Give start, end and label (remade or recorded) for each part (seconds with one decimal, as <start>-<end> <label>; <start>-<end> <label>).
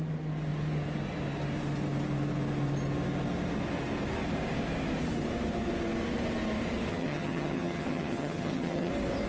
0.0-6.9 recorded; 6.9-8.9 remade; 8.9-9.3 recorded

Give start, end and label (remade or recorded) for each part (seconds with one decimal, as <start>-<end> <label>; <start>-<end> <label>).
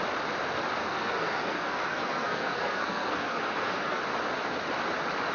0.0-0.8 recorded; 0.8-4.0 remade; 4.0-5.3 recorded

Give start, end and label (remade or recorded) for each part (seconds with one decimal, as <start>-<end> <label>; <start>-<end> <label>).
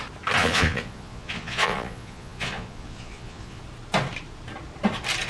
0.0-0.4 recorded; 0.4-3.6 remade; 3.6-5.3 recorded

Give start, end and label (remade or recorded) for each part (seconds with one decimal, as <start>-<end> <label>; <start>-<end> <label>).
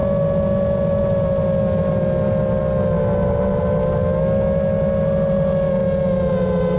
0.0-6.8 recorded